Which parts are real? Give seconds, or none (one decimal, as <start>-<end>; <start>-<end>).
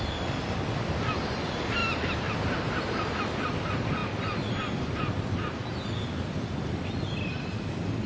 0.0-1.8; 3.1-8.1